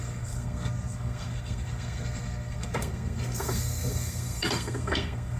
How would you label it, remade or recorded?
remade